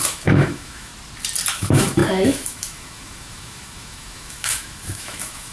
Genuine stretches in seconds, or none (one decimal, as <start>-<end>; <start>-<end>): 0.9-1.5